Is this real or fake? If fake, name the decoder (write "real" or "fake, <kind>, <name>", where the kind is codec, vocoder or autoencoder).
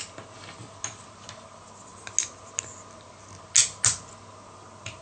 real